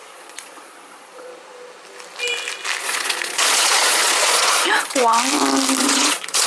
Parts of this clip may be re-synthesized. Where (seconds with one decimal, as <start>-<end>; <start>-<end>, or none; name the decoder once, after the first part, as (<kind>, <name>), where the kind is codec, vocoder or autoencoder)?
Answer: 0.0-1.3 (vocoder, Vocos); 2.8-5.0; 5.8-6.5